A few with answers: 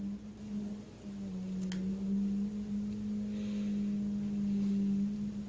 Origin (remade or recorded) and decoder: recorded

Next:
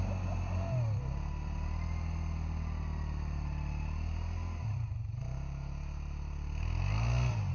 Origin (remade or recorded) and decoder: recorded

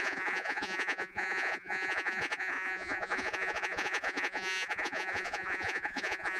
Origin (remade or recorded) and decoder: remade, vocoder, Vocos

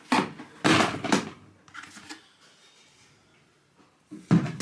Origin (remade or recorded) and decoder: recorded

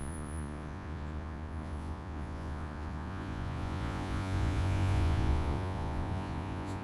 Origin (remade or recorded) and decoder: remade, vocoder, Vocos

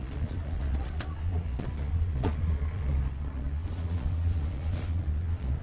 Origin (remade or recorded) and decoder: remade, vocoder, Vocos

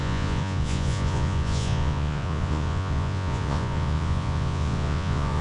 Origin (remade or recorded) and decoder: remade, vocoder, Vocos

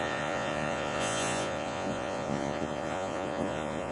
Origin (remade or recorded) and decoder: remade, vocoder, Vocos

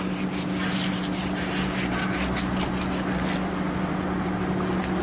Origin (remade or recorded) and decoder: recorded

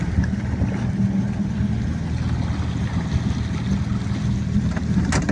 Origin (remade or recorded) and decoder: recorded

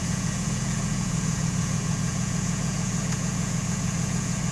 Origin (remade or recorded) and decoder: remade, vocoder, Vocos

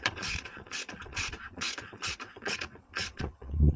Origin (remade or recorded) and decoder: remade, vocoder, Vocos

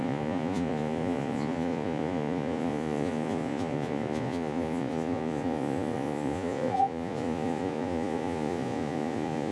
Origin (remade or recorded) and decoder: remade, vocoder, Vocos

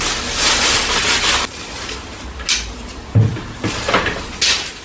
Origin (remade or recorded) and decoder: recorded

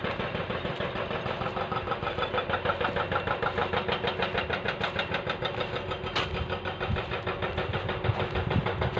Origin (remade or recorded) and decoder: recorded